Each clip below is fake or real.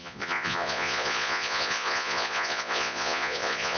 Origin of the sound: fake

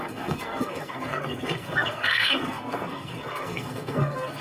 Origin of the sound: fake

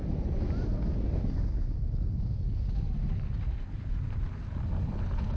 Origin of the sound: real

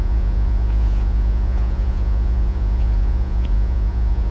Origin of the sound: fake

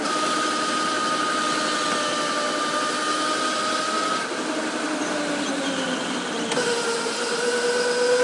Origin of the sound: real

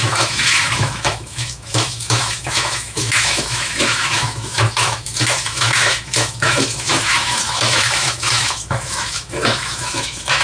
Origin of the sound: fake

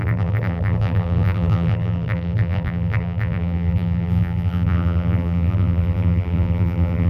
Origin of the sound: fake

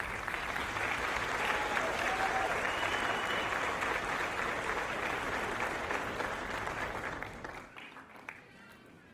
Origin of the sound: real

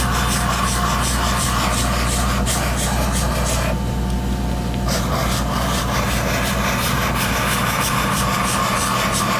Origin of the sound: real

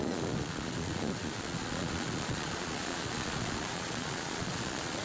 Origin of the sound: fake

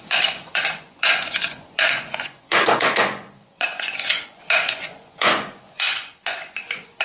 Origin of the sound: fake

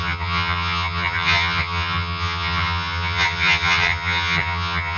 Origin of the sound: fake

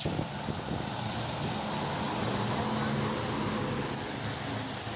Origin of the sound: real